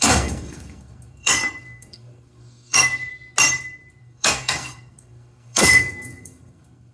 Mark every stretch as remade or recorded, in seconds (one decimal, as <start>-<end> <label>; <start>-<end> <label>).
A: 0.0-3.1 remade; 3.1-4.0 recorded; 4.0-6.9 remade